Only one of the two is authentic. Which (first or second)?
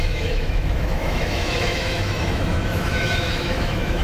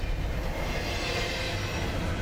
second